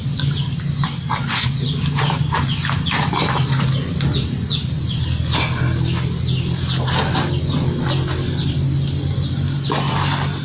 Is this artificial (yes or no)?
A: no